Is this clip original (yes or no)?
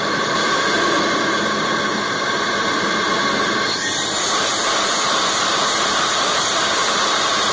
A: no